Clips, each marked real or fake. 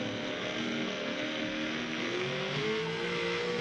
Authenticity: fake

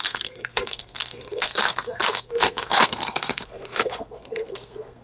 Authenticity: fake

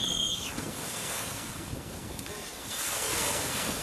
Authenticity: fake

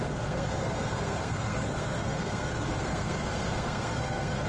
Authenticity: fake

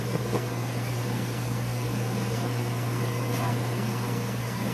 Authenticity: fake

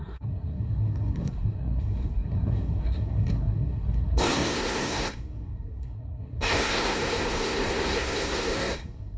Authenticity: fake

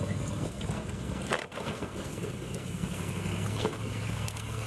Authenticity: fake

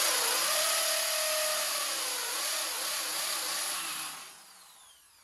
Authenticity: real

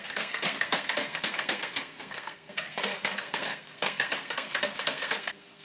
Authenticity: fake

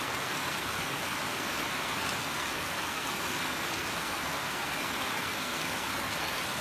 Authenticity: fake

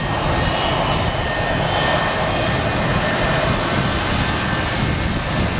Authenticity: real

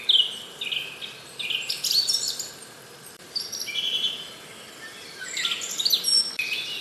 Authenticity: real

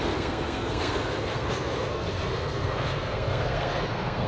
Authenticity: fake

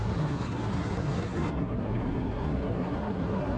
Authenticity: fake